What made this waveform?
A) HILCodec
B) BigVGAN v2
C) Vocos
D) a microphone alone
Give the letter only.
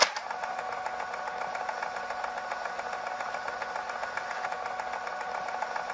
D